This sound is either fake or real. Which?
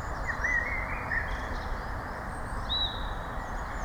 fake